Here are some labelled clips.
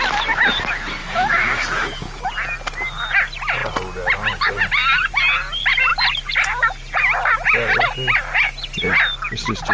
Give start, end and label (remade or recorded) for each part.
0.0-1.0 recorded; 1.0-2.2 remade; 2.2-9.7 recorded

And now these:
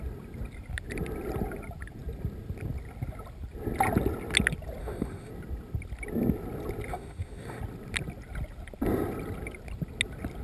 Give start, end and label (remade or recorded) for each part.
0.0-4.8 recorded; 4.8-5.3 remade; 5.3-6.9 recorded; 6.9-7.6 remade; 7.6-10.4 recorded

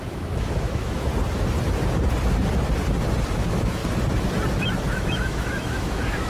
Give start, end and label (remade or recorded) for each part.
0.0-1.1 remade; 1.1-3.3 recorded; 3.3-3.8 remade; 3.8-4.9 recorded; 4.9-6.3 remade

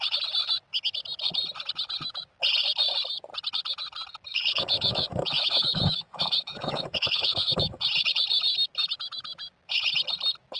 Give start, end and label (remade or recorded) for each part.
0.0-4.3 recorded; 4.3-7.8 remade; 7.8-10.6 recorded